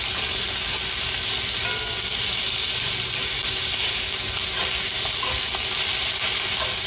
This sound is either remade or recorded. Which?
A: recorded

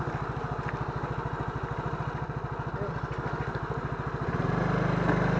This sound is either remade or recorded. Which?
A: recorded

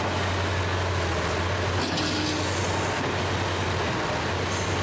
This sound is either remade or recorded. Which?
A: recorded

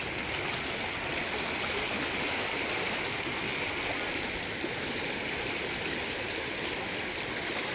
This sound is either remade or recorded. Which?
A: recorded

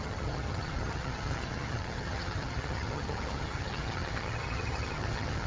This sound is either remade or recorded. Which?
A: remade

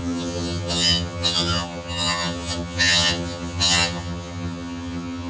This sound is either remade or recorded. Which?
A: remade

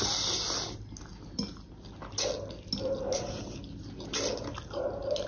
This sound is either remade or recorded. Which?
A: recorded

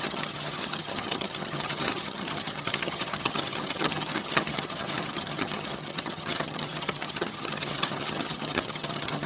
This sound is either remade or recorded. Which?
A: remade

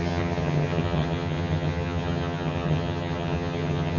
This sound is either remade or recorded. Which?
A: remade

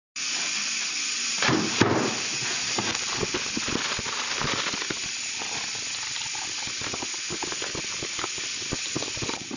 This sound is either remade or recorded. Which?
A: recorded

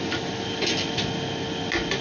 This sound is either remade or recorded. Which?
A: recorded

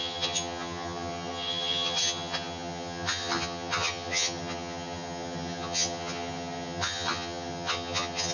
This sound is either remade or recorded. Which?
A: remade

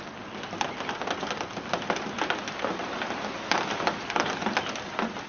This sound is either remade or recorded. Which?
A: recorded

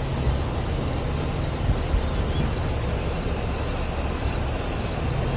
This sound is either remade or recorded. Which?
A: recorded